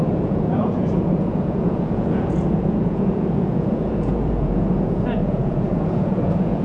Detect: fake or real fake